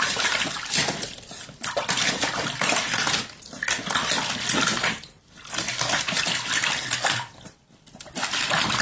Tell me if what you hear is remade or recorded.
recorded